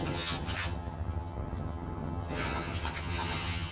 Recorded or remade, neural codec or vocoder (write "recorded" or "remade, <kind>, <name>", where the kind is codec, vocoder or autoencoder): remade, vocoder, HiFi-GAN